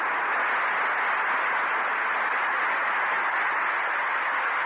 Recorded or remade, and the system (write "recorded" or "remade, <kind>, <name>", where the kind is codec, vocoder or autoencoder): recorded